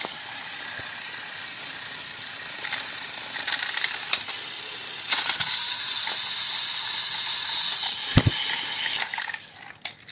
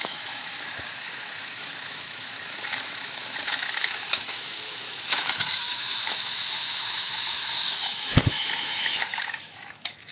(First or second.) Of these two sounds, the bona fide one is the first